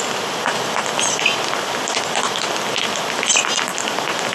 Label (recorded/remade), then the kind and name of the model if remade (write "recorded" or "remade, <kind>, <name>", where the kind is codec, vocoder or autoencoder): recorded